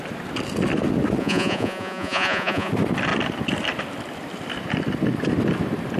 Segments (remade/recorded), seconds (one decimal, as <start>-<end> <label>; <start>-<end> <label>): 0.0-1.2 recorded; 1.2-2.7 remade; 2.7-6.0 recorded

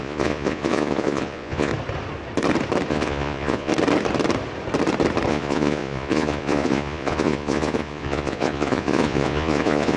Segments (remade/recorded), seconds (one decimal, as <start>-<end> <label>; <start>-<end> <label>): 0.0-1.7 remade; 1.7-2.9 recorded; 2.9-3.7 remade; 3.7-5.3 recorded; 5.3-10.0 remade

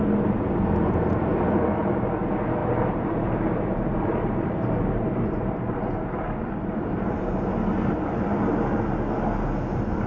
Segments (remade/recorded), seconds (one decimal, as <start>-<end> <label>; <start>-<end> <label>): 0.0-2.6 recorded; 2.6-7.5 remade; 7.5-10.1 recorded

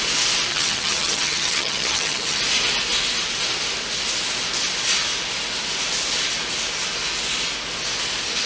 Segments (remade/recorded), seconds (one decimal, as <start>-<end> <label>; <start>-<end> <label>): 0.0-0.5 recorded; 0.5-2.4 remade; 2.4-8.5 recorded